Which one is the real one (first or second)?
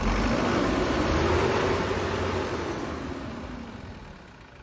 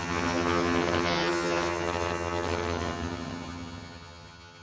first